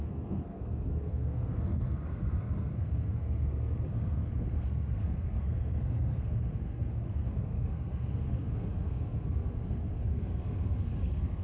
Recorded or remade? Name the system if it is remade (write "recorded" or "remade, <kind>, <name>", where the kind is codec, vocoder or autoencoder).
remade, codec, SNAC